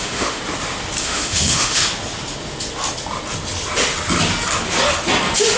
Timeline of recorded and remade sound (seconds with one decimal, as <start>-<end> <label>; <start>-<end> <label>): 0.0-0.4 remade; 0.4-1.0 recorded; 1.0-1.8 remade; 1.8-5.6 recorded